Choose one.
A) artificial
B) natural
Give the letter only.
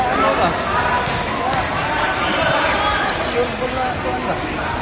B